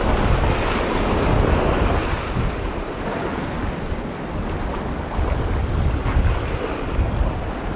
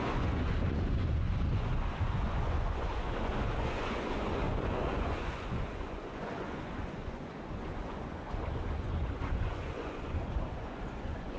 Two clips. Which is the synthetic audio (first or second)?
second